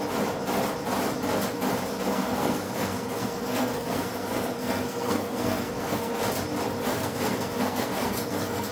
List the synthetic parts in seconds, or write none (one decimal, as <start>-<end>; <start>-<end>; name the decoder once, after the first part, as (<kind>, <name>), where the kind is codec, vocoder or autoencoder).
2.1-6.1 (codec, SNAC); 6.9-8.7